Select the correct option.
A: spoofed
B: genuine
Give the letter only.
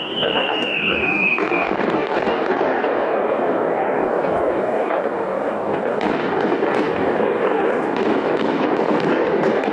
A